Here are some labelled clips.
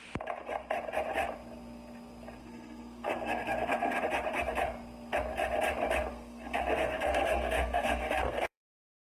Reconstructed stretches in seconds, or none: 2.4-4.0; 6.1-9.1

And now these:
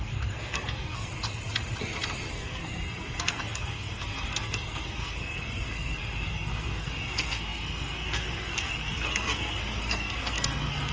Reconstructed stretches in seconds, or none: 0.0-1.1; 2.3-10.9

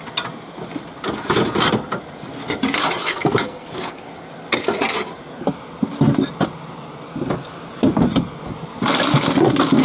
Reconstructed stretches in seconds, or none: 3.1-4.1

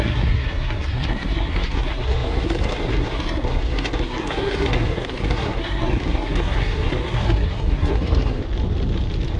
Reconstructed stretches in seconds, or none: 0.0-8.4

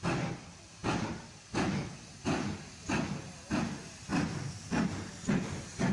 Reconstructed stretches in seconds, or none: none